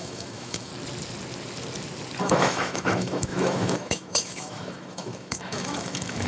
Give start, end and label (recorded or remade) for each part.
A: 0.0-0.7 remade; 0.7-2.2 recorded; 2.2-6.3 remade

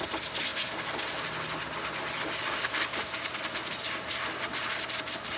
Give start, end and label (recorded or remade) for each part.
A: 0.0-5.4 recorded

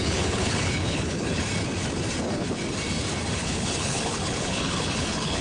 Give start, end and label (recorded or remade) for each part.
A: 0.0-1.5 remade; 1.5-2.2 recorded; 2.2-2.6 remade; 2.6-3.4 recorded; 3.4-5.4 remade

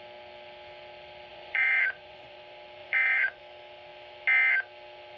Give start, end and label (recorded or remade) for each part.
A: 0.0-1.3 recorded; 1.3-2.4 remade; 2.4-2.8 recorded; 2.8-3.4 remade; 3.4-5.2 recorded

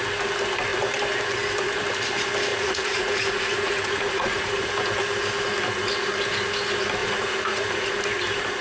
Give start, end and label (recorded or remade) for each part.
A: 0.0-2.5 recorded; 2.5-4.7 remade; 4.7-7.0 recorded; 7.0-7.9 remade; 7.9-8.6 recorded